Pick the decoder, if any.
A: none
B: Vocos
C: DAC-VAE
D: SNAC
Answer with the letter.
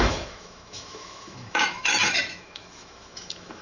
C